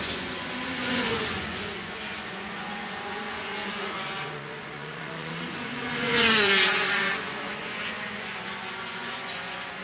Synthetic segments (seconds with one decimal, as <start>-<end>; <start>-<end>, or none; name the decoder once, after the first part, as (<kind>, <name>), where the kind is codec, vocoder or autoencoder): 0.0-9.8 (vocoder, Vocos)